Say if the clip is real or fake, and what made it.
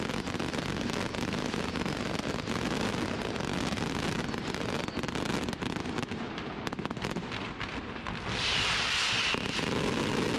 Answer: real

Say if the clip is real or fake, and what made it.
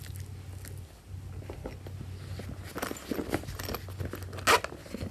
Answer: real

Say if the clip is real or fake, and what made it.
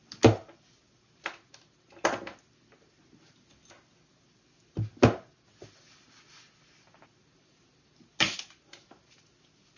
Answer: real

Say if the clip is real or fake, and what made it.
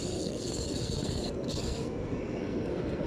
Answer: fake, codec, SNAC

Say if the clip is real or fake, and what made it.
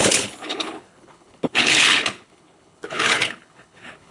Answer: fake, codec, HILCodec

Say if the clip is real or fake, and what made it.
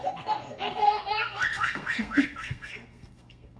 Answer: fake, codec, SNAC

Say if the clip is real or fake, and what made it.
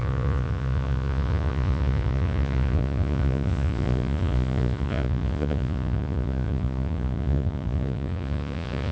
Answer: fake, vocoder, Vocos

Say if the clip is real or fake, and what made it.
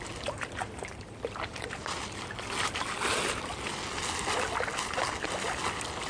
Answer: real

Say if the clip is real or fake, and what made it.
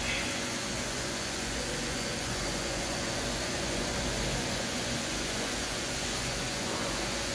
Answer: fake, vocoder, Vocos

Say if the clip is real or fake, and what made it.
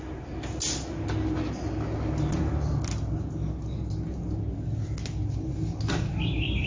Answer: real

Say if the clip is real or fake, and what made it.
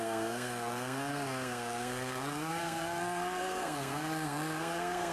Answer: fake, codec, SNAC